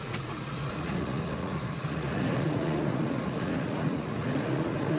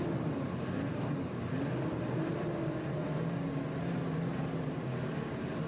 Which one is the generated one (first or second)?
first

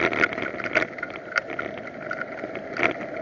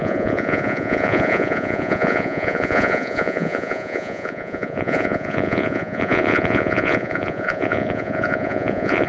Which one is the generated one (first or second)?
second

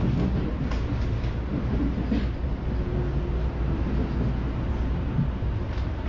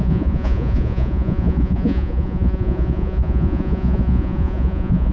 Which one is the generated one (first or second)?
second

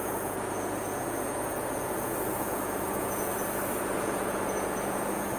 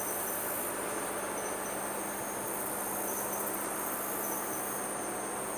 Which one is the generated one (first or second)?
first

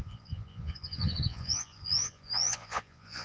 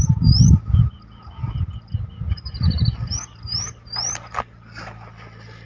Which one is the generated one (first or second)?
first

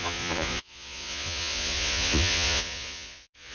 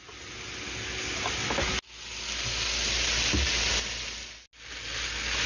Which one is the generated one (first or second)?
first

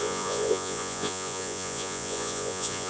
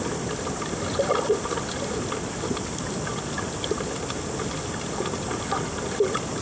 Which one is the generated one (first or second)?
first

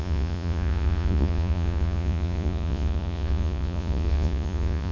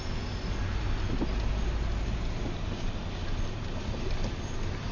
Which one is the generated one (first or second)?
first